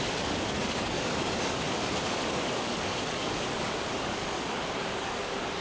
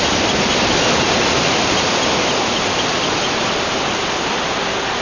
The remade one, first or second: first